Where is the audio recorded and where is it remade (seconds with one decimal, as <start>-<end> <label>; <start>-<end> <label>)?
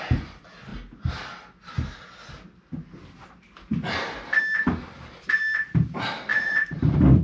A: 0.0-6.3 recorded; 6.3-6.8 remade; 6.8-7.2 recorded